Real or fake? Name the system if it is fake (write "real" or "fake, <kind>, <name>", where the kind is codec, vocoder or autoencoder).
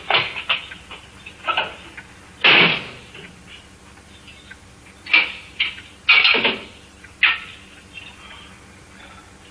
real